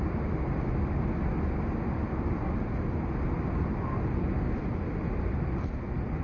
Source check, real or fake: real